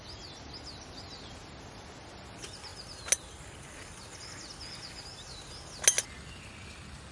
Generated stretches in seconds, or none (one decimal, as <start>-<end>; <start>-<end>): none